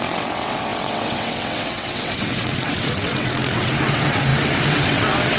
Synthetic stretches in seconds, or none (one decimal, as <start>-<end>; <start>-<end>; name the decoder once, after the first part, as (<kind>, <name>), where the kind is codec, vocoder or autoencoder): 0.0-5.4 (vocoder, WaveNeXt)